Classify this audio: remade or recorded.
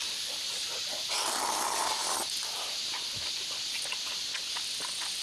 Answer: recorded